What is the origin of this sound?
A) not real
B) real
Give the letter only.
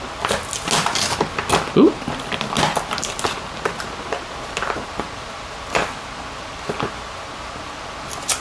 B